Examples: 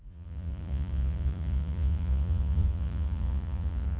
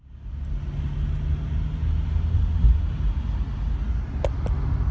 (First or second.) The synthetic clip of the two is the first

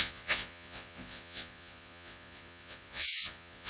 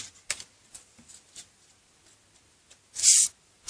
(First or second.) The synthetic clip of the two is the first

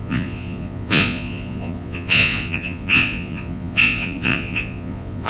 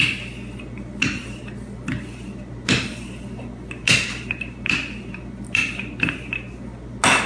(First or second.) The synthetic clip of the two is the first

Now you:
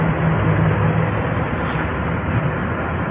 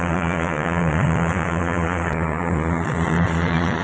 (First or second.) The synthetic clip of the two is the second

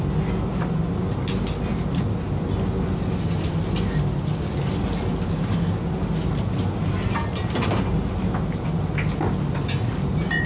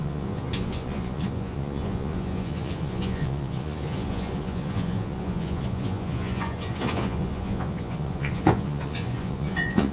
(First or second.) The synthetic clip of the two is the second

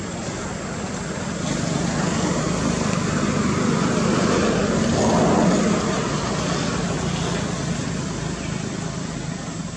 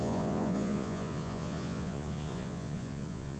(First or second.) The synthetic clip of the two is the second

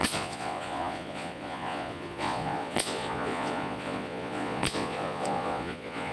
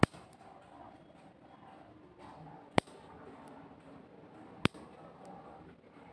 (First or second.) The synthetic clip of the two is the first